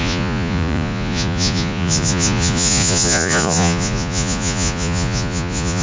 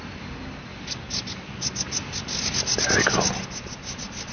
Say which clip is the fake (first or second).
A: first